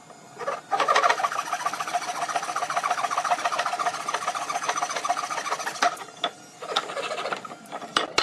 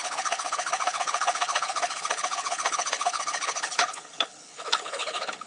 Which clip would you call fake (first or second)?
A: second